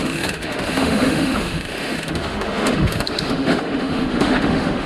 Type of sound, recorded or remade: remade